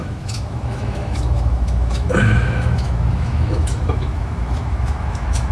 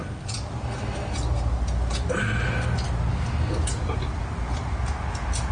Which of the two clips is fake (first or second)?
first